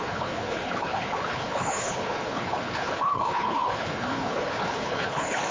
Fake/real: fake